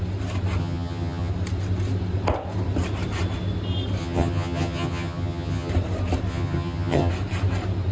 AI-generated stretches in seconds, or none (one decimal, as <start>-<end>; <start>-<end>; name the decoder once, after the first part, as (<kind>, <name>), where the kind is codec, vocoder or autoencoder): 0.6-1.3 (vocoder, HiFi-GAN); 4.0-5.7; 6.3-7.1

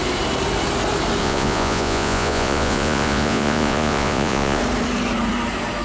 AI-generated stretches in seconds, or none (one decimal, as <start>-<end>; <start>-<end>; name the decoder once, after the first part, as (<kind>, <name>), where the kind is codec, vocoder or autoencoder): 1.2-4.6 (vocoder, Vocos)

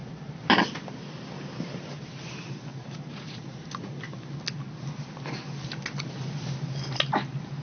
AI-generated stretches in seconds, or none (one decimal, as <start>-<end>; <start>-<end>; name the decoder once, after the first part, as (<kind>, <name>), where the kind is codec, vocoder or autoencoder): 2.7-3.9 (vocoder, Vocos)